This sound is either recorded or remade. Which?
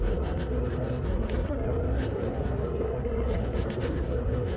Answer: remade